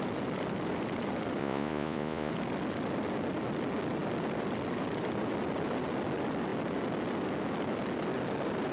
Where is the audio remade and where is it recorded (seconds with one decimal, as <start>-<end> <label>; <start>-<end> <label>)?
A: 0.0-1.4 recorded; 1.4-2.3 remade; 2.3-8.7 recorded